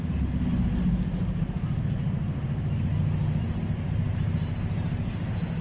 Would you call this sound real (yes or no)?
yes